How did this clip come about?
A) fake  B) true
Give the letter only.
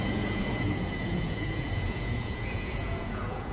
A